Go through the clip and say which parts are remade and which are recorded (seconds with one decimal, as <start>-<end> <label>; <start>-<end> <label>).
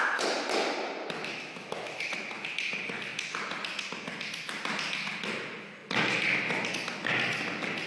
0.0-1.2 recorded; 1.2-2.0 remade; 2.0-7.9 recorded